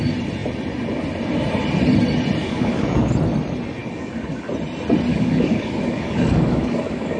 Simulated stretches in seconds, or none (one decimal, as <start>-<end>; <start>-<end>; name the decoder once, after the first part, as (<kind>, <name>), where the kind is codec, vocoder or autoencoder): 2.4-3.1 (codec, DAC); 3.8-4.5; 5.1-7.2